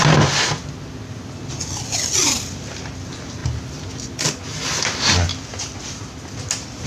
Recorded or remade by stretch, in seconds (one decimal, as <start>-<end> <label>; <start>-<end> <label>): 0.0-6.9 recorded